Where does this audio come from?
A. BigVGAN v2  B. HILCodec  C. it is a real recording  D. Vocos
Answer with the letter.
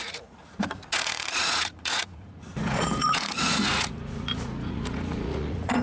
D